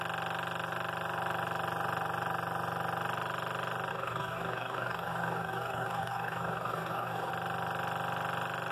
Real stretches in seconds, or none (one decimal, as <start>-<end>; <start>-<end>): 0.0-3.9; 7.3-8.7